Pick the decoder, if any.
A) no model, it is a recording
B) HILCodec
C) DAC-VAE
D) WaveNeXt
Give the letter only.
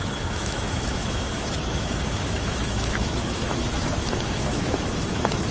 C